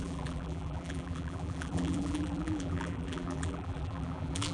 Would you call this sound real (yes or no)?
no